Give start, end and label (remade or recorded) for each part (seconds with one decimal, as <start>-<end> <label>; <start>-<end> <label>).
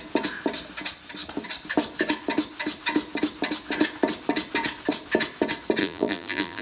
0.0-5.8 recorded; 5.8-6.6 remade